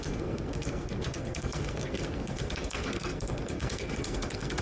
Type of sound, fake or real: fake